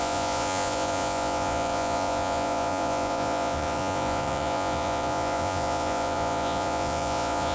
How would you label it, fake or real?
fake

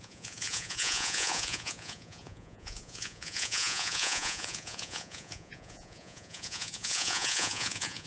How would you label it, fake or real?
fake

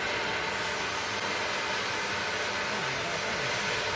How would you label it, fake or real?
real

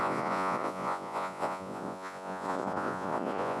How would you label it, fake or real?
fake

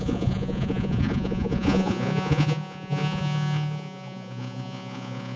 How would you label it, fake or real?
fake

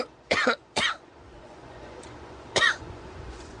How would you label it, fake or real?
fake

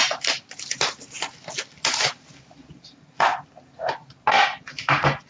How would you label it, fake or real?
real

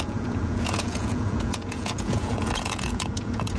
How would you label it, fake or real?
fake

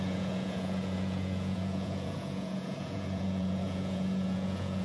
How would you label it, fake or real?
fake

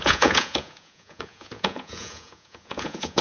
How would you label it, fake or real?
fake